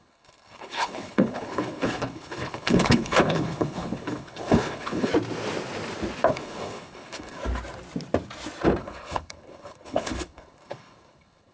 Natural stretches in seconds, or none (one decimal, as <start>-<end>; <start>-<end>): 5.1-6.3; 7.4-8.8

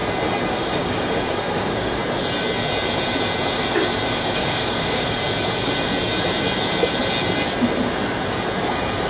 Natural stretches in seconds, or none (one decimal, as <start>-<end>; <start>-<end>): 0.0-0.5; 2.0-4.1; 5.2-9.1

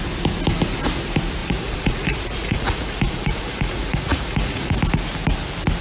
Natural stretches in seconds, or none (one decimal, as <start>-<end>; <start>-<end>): 0.0-1.4; 4.8-5.8

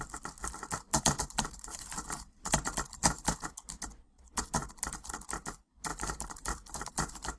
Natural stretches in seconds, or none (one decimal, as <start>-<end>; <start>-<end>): 0.0-0.9; 2.5-3.0; 3.5-5.9; 6.9-7.4

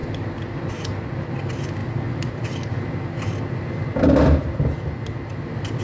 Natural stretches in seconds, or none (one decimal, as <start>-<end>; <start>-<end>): 0.7-1.8; 2.7-5.8

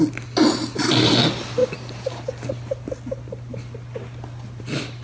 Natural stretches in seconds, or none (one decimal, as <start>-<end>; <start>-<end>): 0.0-5.0